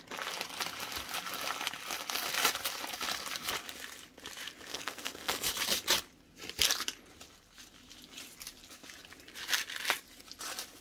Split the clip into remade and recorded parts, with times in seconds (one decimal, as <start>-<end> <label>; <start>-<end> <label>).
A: 0.0-4.7 recorded; 4.7-5.5 remade; 5.5-10.8 recorded